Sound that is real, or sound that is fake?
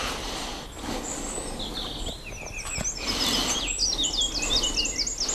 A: real